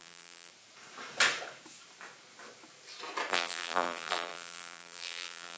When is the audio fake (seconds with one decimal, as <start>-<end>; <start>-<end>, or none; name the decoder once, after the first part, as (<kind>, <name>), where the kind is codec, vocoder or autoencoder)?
0.0-0.5 (vocoder, BigVGAN v2); 3.3-5.6